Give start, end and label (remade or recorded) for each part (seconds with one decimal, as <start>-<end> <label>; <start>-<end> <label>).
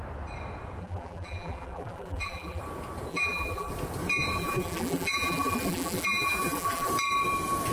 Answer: 0.0-0.8 recorded; 0.8-2.6 remade; 2.6-3.1 recorded; 3.1-3.7 remade; 3.7-4.4 recorded; 4.4-6.9 remade; 6.9-7.7 recorded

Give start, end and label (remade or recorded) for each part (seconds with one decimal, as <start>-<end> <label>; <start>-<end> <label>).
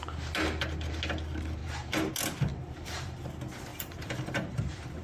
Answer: 0.0-1.6 recorded; 1.6-2.1 remade; 2.1-2.5 recorded; 2.5-3.2 remade; 3.2-3.7 recorded; 3.7-4.6 remade; 4.6-5.0 recorded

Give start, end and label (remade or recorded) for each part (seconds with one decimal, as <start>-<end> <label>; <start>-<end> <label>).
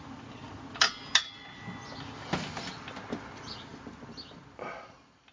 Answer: 0.0-5.3 recorded